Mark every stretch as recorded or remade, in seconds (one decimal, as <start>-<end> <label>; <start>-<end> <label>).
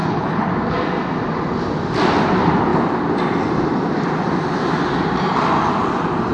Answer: 0.0-0.5 remade; 0.5-6.3 recorded